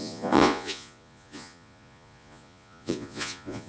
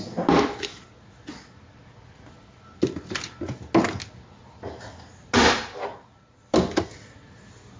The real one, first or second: second